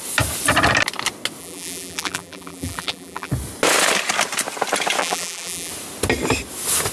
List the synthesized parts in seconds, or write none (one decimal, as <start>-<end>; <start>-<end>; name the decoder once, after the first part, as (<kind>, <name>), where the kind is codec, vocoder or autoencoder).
1.4-3.3 (vocoder, BigVGAN v2); 5.0-5.7